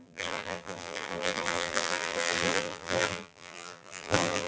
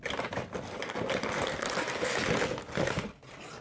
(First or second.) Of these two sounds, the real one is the second